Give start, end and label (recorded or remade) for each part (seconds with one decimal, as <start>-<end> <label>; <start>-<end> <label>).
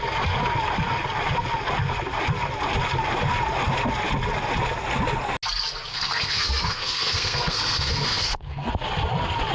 0.0-5.9 recorded; 5.9-8.7 remade; 8.7-9.5 recorded